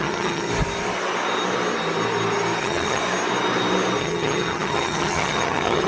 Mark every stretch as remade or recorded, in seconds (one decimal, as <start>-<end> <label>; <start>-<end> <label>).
0.0-0.5 remade; 0.5-2.6 recorded; 2.6-3.0 remade; 3.0-4.0 recorded; 4.0-5.9 remade